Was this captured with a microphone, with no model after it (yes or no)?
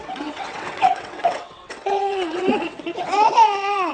no